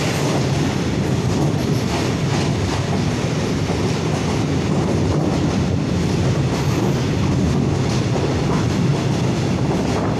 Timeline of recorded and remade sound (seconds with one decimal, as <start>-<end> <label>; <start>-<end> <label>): 0.0-10.2 recorded